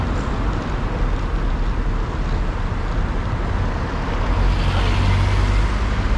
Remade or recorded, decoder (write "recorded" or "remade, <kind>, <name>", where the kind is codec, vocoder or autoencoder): recorded